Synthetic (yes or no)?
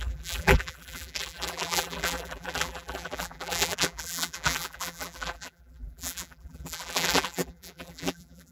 yes